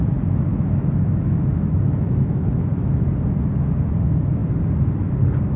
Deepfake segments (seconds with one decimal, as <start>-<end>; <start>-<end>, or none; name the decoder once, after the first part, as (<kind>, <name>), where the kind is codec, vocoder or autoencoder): 0.5-3.1 (autoencoder, DAC-VAE)